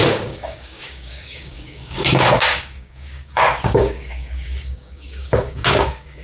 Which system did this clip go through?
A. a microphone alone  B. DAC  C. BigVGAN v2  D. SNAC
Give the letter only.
B